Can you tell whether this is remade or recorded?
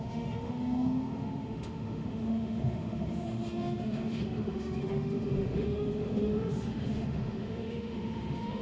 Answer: remade